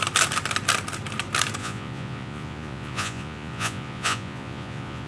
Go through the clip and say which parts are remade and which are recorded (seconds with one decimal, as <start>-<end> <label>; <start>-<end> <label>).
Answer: 0.0-1.6 recorded; 1.6-5.1 remade